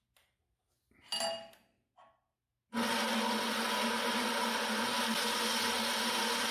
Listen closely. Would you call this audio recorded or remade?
recorded